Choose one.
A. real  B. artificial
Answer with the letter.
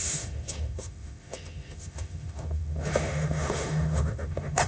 B